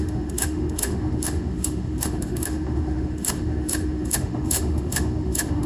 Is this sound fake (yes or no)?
yes